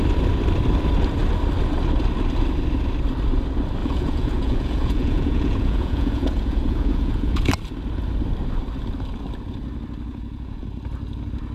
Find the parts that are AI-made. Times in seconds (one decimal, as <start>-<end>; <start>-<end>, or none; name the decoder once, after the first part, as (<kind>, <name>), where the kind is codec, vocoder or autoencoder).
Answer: 3.8-7.5 (vocoder, Vocos); 10.1-10.6